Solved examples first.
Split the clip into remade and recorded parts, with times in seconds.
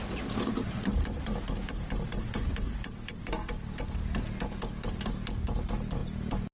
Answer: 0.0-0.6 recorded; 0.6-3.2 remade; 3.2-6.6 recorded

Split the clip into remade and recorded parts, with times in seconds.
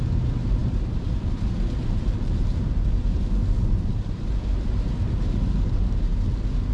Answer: 0.0-3.4 remade; 3.4-3.9 recorded; 3.9-6.1 remade; 6.1-6.7 recorded